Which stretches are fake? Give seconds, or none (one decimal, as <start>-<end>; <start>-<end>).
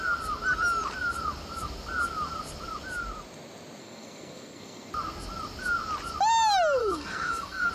3.8-4.9; 6.8-7.7